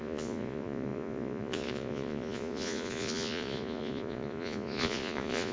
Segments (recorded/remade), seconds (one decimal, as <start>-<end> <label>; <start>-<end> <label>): 0.0-5.5 remade